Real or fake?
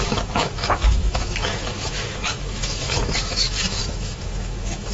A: fake